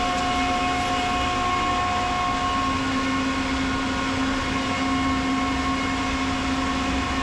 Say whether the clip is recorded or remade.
recorded